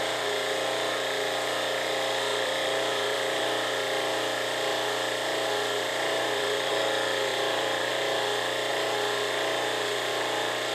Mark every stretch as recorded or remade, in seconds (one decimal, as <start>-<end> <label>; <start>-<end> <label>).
0.0-2.3 recorded; 2.3-3.4 remade; 3.4-5.9 recorded; 5.9-6.7 remade; 6.7-7.3 recorded; 7.3-7.9 remade; 7.9-10.7 recorded